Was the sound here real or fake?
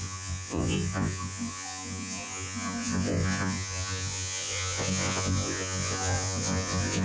fake